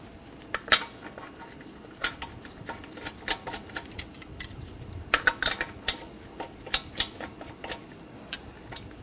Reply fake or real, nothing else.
real